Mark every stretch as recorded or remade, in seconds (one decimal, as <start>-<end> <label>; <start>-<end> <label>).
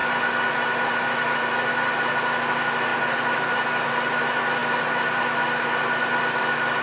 0.0-6.8 recorded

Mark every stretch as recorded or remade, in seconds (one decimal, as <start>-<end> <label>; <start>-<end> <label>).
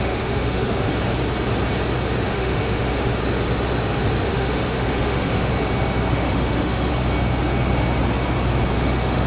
0.0-0.9 remade; 0.9-2.3 recorded; 2.3-3.2 remade; 3.2-4.3 recorded; 4.3-5.5 remade; 5.5-6.1 recorded; 6.1-6.9 remade; 6.9-8.7 recorded; 8.7-9.3 remade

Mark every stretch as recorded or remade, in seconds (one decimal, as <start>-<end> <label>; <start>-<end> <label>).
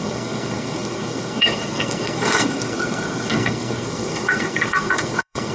0.0-5.5 remade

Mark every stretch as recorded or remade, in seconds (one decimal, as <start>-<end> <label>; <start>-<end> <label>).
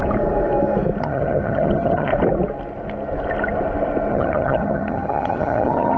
0.0-1.0 recorded; 1.0-2.1 remade; 2.1-4.1 recorded; 4.1-6.0 remade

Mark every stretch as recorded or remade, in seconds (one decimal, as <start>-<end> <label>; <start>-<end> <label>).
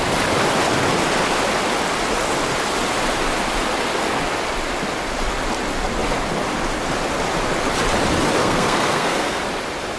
0.0-8.4 recorded; 8.4-9.4 remade; 9.4-10.0 recorded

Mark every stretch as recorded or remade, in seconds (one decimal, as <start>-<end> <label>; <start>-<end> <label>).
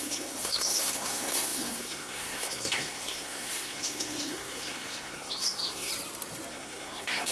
0.0-5.9 remade; 5.9-6.5 recorded; 6.5-7.3 remade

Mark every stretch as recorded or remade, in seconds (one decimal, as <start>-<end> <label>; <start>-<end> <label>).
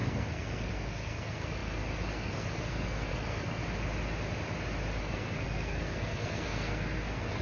0.0-3.6 remade; 3.6-5.0 recorded; 5.0-7.4 remade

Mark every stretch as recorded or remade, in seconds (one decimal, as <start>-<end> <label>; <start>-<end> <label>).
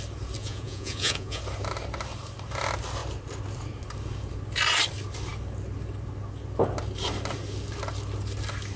0.0-0.4 recorded; 0.4-1.4 remade; 1.4-8.8 recorded